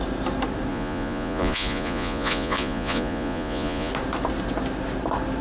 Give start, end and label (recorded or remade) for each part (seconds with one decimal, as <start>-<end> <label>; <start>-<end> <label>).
0.0-0.7 recorded; 0.7-3.9 remade; 3.9-5.4 recorded